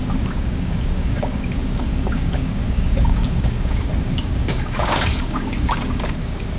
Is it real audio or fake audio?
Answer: fake